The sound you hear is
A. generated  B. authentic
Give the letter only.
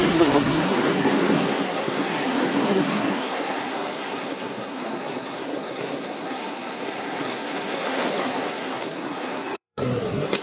A